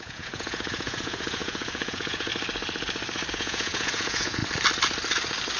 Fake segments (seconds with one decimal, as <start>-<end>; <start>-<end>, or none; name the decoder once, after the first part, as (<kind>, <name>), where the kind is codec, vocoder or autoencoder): 0.0-2.3 (vocoder, Vocos); 3.3-4.4